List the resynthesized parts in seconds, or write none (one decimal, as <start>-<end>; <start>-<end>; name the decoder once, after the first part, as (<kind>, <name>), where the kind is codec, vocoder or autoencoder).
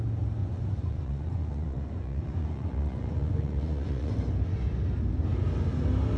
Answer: 0.4-4.1 (vocoder, Vocos)